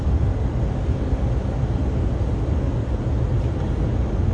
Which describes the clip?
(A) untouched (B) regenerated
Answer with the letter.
A